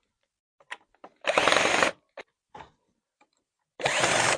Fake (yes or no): yes